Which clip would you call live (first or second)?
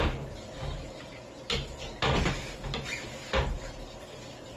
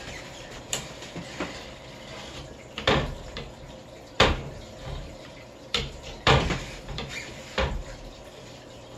first